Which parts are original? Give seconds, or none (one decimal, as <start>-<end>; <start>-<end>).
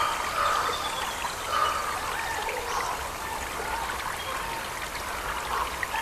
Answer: 0.0-6.0